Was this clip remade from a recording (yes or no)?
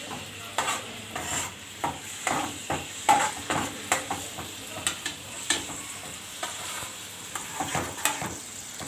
yes